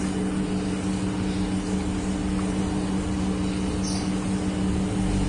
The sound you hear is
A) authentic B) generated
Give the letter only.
A